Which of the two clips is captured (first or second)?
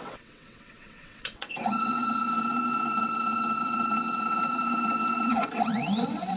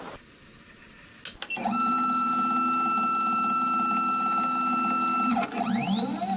second